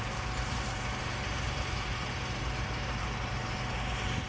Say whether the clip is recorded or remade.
remade